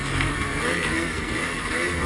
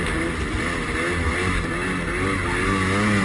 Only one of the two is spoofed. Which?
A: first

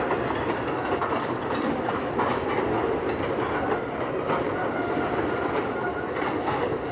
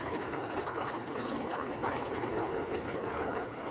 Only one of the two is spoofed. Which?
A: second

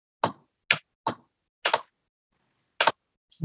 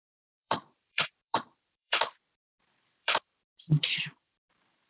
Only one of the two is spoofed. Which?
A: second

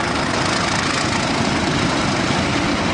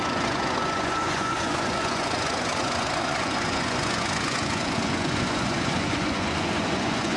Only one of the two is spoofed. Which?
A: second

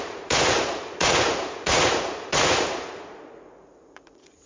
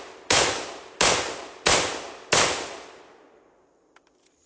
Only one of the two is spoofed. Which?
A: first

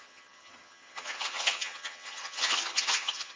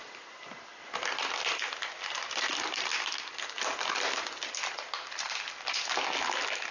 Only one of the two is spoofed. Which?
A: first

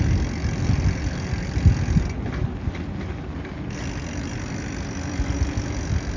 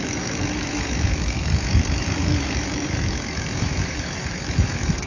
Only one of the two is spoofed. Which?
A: second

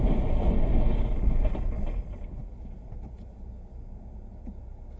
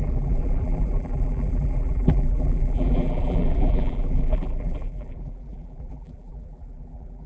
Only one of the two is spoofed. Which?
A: second